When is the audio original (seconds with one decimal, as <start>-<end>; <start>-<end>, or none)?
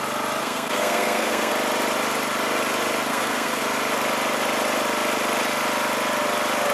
0.0-0.4; 1.5-3.1; 3.6-6.7